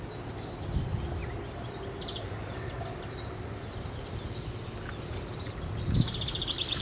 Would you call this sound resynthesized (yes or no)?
no